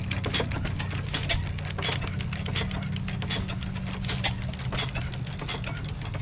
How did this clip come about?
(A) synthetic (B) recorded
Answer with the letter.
B